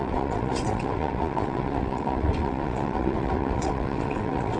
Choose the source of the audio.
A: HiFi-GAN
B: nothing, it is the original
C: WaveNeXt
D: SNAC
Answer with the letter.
C